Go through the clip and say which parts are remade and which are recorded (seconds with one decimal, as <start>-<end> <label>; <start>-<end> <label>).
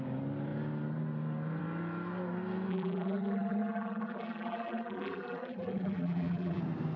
0.0-2.7 recorded; 2.7-6.6 remade; 6.6-7.0 recorded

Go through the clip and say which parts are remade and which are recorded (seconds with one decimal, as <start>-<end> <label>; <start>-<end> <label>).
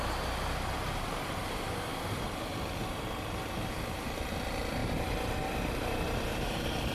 0.0-6.3 recorded; 6.3-6.9 remade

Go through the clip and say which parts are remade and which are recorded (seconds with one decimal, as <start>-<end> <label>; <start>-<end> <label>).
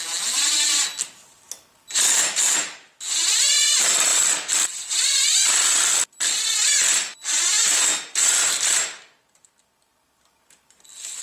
0.0-11.2 recorded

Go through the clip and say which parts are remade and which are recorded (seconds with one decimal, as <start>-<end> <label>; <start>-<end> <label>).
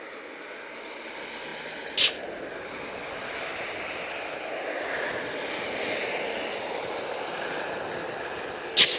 0.0-6.5 recorded; 6.5-7.2 remade; 7.2-9.0 recorded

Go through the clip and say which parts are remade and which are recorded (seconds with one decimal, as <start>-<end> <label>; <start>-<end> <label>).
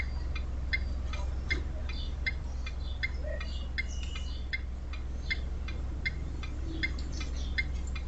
0.0-1.8 recorded; 1.8-2.7 remade; 2.7-8.1 recorded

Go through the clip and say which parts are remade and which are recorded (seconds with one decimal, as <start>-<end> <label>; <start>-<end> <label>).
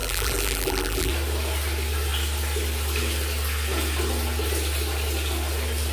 0.0-1.1 remade; 1.1-5.9 recorded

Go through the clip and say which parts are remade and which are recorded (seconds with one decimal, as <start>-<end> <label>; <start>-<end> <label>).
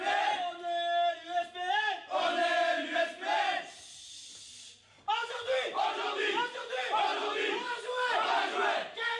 0.0-9.2 recorded